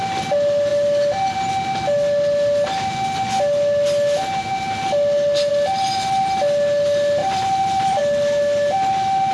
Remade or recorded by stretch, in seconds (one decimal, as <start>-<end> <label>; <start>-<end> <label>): 0.0-7.2 recorded; 7.2-8.0 remade; 8.0-9.3 recorded